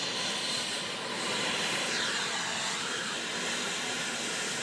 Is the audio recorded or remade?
remade